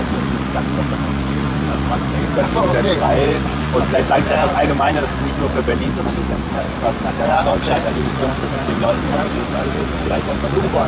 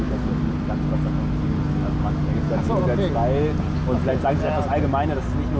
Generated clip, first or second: first